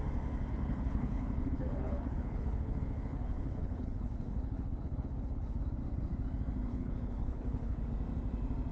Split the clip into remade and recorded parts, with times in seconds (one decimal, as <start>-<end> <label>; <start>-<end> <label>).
0.0-0.5 recorded; 0.5-5.6 remade; 5.6-6.7 recorded; 6.7-7.8 remade; 7.8-8.7 recorded